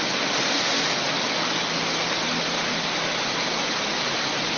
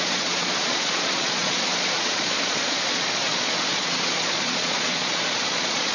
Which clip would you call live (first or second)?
first